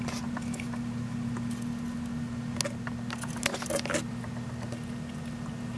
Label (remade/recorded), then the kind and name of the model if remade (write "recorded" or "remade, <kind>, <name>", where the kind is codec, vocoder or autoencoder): recorded